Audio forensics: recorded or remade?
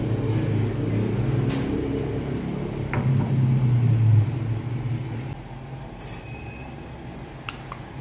recorded